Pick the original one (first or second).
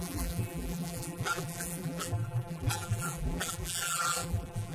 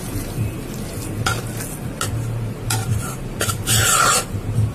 second